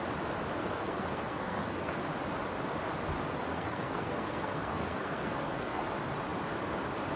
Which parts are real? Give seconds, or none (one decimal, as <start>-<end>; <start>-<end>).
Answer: 0.0-0.6; 2.0-3.4; 5.8-7.2